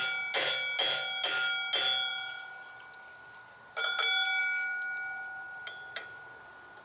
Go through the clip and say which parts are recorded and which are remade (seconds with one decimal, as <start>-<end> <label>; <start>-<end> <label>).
0.0-6.8 recorded